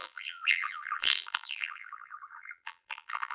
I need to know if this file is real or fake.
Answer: fake